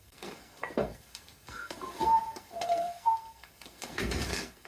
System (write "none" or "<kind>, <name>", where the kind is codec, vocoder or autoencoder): codec, SNAC